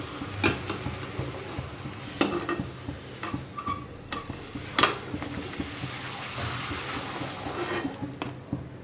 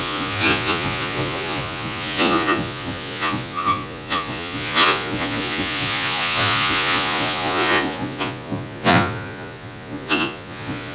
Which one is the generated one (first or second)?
second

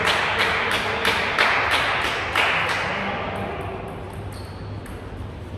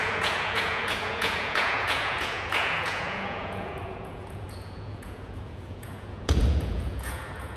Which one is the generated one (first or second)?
second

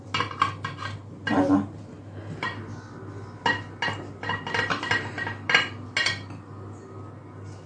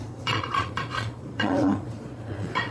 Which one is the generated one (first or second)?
second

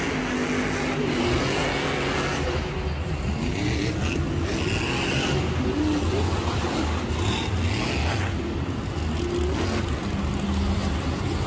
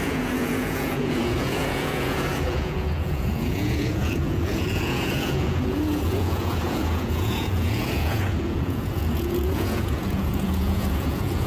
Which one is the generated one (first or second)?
second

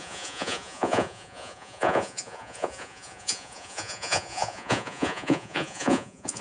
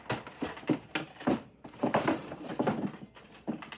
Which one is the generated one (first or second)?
first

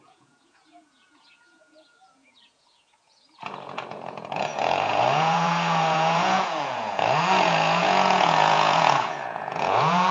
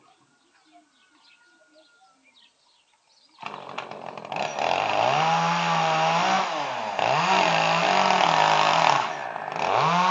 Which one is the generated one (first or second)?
first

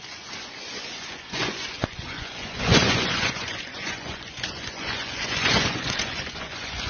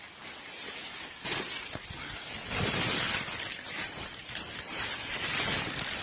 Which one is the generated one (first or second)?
first